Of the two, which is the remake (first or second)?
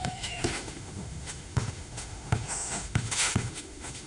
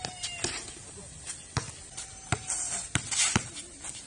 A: first